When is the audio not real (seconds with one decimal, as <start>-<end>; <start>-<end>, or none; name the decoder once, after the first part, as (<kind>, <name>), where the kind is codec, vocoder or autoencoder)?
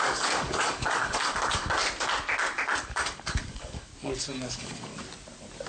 0.0-1.8 (codec, DAC); 2.8-3.9; 4.5-4.9